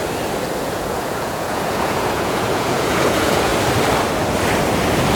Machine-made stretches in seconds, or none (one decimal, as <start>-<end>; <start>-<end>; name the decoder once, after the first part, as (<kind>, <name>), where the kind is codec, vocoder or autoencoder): 0.6-3.5 (vocoder, Vocos)